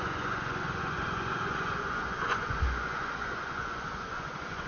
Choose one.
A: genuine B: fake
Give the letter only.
B